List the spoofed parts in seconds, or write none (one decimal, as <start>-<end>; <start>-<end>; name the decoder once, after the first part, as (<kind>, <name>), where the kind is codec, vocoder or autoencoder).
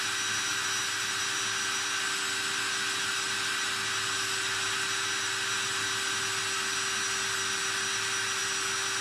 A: none